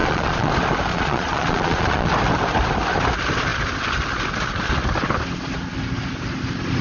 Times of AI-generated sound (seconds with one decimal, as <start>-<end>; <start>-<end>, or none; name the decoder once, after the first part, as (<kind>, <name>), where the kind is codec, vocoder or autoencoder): 0.0-0.5 (vocoder, Vocos); 0.9-2.1